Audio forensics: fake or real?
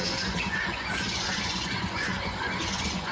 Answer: fake